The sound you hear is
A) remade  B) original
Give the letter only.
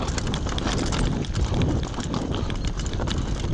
B